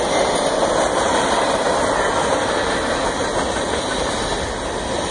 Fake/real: real